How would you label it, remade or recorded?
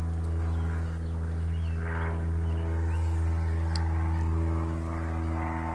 recorded